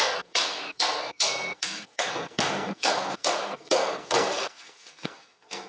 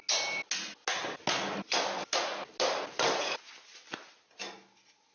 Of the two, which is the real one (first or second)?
second